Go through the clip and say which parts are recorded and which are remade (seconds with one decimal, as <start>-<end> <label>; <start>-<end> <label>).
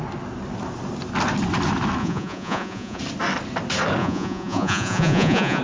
0.0-2.0 recorded; 2.0-3.0 remade; 3.0-4.0 recorded; 4.0-5.6 remade